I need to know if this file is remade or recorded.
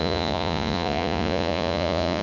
remade